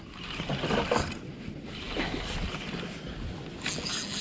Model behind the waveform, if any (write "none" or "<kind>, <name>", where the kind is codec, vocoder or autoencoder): none